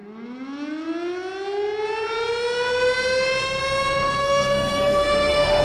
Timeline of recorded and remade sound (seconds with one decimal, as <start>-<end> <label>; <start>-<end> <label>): 0.0-4.2 recorded; 4.2-5.6 remade